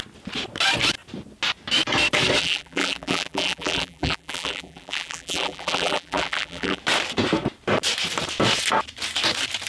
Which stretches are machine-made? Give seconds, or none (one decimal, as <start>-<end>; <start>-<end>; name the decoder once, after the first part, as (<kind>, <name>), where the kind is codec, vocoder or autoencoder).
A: 2.4-6.8 (vocoder, BigVGAN v2)